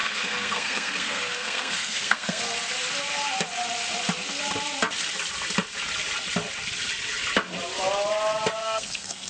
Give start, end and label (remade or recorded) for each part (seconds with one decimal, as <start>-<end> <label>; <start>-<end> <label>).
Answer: 0.0-2.4 remade; 2.4-8.6 recorded; 8.6-9.3 remade